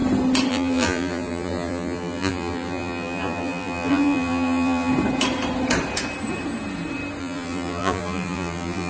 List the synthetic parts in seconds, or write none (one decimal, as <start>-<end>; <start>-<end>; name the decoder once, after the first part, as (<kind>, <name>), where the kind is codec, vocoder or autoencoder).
0.5-4.9 (vocoder, BigVGAN v2); 7.2-8.9